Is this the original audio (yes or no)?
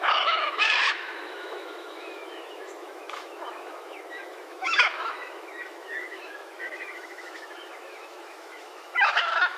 no